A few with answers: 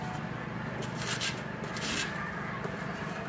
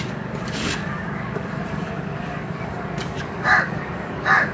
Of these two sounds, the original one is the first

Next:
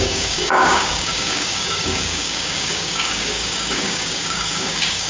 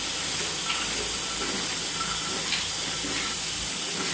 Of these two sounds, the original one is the second